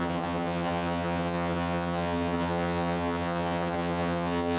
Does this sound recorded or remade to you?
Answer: remade